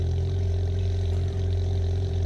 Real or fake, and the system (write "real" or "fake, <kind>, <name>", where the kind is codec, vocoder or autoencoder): fake, vocoder, BigVGAN v2